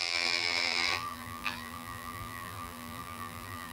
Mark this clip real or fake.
fake